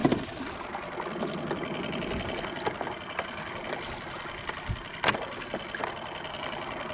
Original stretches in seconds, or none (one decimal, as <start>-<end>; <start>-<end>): 0.0-6.9